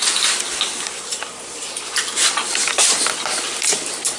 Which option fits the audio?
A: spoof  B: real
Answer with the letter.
A